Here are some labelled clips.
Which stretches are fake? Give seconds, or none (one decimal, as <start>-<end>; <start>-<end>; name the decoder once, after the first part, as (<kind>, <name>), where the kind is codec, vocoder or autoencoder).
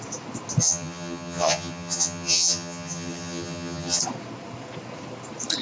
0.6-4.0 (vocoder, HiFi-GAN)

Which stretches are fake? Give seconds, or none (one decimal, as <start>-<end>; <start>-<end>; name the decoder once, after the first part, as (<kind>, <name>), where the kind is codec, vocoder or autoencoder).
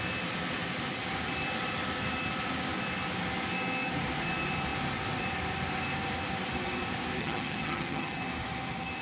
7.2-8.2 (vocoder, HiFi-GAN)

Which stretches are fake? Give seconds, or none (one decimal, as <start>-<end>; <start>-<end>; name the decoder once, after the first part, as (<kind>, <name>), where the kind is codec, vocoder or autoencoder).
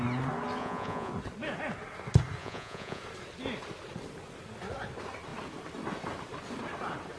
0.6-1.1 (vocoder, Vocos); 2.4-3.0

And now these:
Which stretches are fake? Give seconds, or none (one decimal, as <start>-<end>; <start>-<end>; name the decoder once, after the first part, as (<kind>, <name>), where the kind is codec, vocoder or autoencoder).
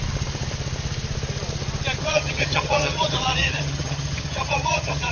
2.0-5.1 (vocoder, HiFi-GAN)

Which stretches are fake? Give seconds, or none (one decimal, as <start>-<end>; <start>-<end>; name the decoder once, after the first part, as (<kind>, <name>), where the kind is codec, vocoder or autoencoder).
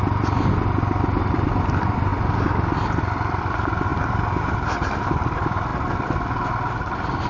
0.0-2.1 (vocoder, BigVGAN v2); 3.4-3.9; 4.4-5.7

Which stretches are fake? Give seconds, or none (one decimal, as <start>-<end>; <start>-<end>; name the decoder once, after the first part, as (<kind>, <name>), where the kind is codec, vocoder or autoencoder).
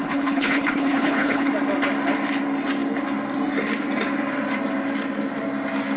0.0-1.5 (codec, HILCodec)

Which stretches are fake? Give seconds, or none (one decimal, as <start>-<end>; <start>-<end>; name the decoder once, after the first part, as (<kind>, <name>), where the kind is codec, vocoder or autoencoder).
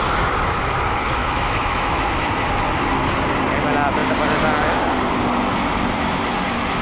1.2-2.3 (autoencoder, DAC-VAE)